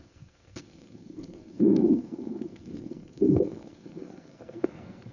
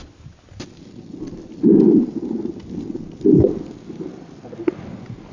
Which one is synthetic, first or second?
first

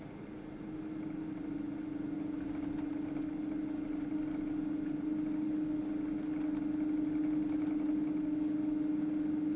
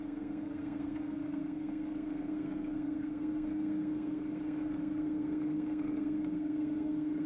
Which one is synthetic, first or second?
second